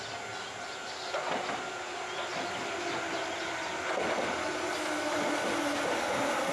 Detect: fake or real real